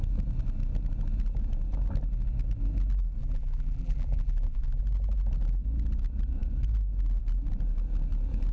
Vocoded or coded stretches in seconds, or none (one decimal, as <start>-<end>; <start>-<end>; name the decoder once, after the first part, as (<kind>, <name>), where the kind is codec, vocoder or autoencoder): 3.2-4.8 (vocoder, BigVGAN v2)